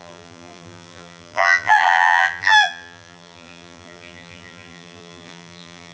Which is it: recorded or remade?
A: remade